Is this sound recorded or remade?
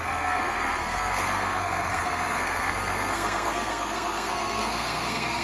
remade